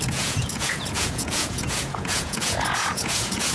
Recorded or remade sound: remade